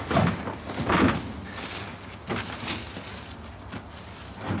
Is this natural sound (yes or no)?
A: yes